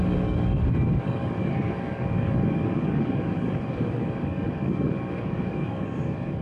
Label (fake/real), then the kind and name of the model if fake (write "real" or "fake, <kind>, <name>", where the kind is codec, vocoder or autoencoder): fake, codec, DAC